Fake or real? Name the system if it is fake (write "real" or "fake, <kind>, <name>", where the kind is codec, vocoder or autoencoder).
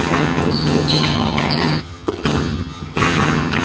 fake, vocoder, HiFi-GAN